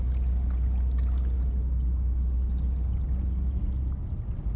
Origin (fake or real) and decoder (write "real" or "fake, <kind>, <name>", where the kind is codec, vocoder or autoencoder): real